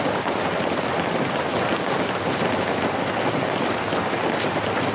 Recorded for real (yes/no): yes